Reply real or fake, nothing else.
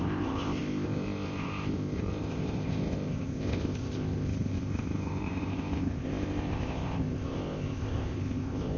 fake